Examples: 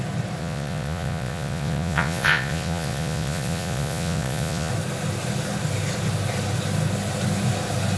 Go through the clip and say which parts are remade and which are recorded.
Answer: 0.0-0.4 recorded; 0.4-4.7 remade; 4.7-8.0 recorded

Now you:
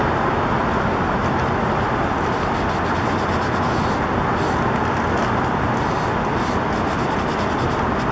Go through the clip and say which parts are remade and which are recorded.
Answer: 0.0-8.1 recorded